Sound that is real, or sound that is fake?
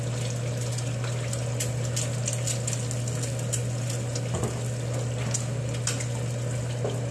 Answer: real